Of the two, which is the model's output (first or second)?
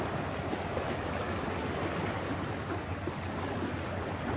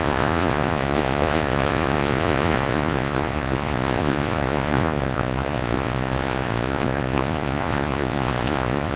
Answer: second